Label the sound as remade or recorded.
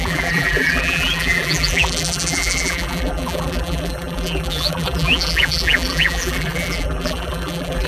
remade